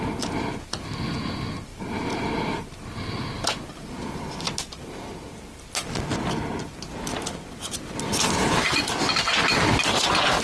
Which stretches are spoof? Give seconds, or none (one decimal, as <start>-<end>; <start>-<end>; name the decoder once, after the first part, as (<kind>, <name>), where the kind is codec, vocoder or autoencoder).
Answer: 8.1-9.0 (vocoder, BigVGAN v2)

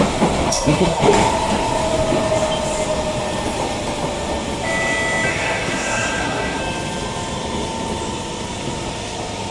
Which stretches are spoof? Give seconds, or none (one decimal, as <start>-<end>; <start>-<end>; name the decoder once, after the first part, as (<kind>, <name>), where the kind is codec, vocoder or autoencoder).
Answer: 0.5-1.0 (codec, SNAC); 5.3-6.6

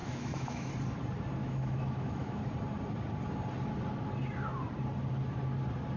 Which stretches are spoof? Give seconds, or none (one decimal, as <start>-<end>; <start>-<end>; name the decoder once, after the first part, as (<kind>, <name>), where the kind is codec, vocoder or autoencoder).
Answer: 0.0-0.7 (autoencoder, DAC-VAE); 1.4-2.4

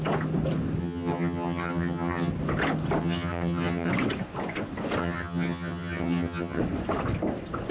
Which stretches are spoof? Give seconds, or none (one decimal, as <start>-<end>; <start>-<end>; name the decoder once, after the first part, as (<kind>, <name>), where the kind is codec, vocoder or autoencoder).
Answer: 0.8-2.3 (vocoder, HiFi-GAN); 3.0-3.9; 5.0-6.6

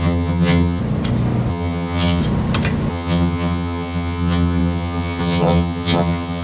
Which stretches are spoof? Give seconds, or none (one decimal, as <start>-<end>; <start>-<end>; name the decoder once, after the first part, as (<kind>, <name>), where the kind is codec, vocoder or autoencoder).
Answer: 0.0-0.8 (vocoder, HiFi-GAN); 1.5-2.2; 2.9-6.4